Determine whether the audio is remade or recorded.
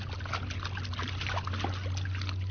recorded